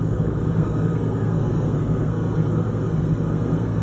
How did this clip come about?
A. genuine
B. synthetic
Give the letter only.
B